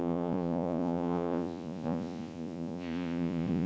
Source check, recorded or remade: remade